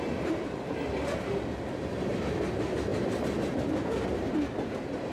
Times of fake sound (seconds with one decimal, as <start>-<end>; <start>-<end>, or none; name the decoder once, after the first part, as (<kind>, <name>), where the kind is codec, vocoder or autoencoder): none